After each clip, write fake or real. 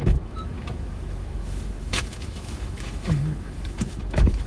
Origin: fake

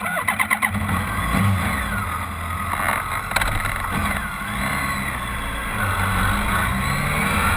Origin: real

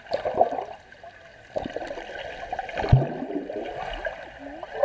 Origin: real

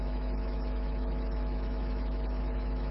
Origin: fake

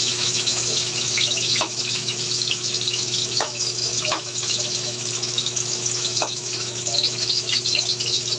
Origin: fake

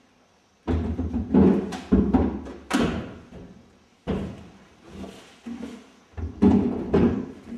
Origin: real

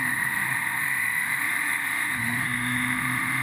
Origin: fake